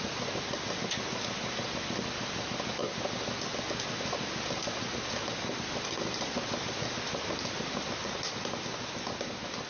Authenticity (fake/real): real